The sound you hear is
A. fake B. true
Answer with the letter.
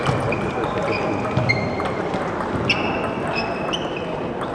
B